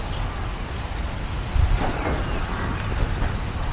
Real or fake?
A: real